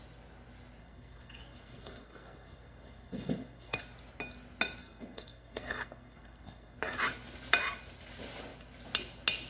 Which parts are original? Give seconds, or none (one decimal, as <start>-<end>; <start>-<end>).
0.0-0.8; 3.8-4.8; 6.8-9.5